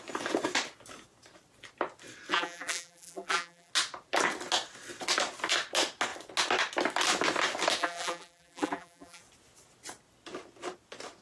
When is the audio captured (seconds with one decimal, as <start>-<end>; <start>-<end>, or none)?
0.0-2.3; 3.7-7.8; 9.2-11.2